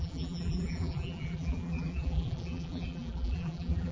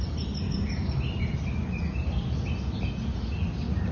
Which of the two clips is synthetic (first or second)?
first